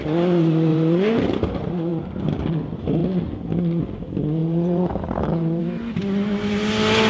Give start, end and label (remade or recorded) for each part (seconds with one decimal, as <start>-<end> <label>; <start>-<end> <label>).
0.0-0.7 recorded; 0.7-1.5 remade; 1.5-4.4 recorded; 4.4-5.6 remade; 5.6-7.1 recorded